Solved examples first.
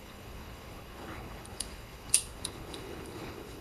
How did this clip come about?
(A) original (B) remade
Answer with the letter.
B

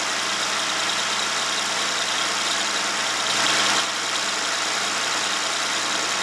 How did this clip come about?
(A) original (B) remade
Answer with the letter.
A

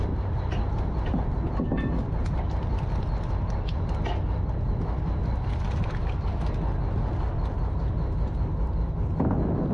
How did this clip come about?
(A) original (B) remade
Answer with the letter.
A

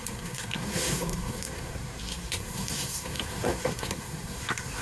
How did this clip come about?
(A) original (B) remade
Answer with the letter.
B